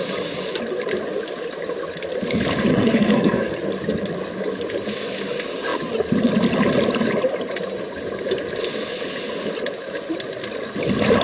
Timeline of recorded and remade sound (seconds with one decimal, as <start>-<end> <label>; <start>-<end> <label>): 0.0-2.7 recorded; 2.7-3.5 remade; 3.5-11.2 recorded